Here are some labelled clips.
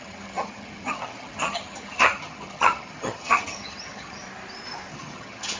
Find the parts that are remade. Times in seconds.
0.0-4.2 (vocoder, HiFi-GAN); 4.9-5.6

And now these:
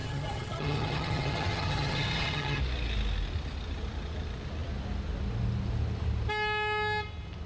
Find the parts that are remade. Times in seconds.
0.0-2.6 (vocoder, HiFi-GAN)

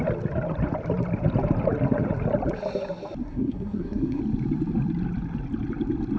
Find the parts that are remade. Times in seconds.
3.2-4.2 (codec, SNAC)

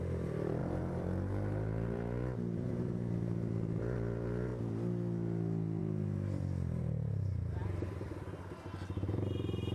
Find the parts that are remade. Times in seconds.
0.0-4.5 (vocoder, BigVGAN v2); 5.8-7.6; 8.8-9.7

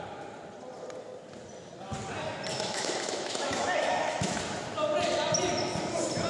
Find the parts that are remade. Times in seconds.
2.5-4.4 (autoencoder, DAC-VAE)

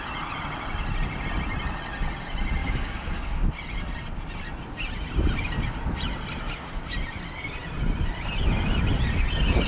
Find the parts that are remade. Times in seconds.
2.6-3.5 (codec, DAC)

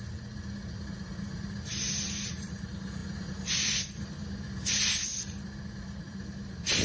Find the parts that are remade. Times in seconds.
0.0-1.7 (vocoder, BigVGAN v2); 2.3-5.1; 5.7-6.8

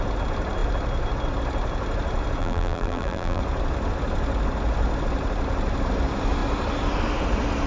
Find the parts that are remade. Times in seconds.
2.4-3.4 (vocoder, BigVGAN v2)